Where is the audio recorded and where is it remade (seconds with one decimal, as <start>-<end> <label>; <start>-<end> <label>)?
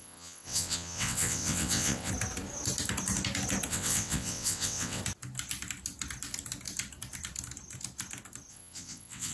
0.0-2.1 remade; 2.1-3.7 recorded; 3.7-5.0 remade; 5.0-8.5 recorded; 8.5-9.3 remade